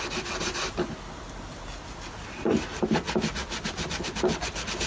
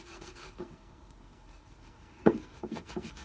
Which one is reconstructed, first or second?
second